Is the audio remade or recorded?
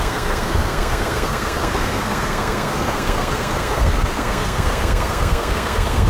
remade